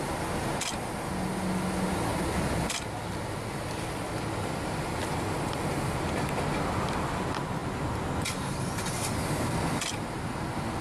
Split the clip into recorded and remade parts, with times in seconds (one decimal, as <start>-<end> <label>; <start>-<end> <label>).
0.0-10.8 recorded